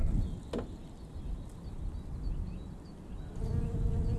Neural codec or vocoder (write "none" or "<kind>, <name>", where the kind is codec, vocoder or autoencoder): none